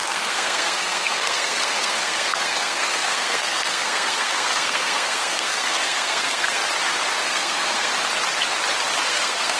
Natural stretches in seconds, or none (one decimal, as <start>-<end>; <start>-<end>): 6.6-7.2; 7.9-9.1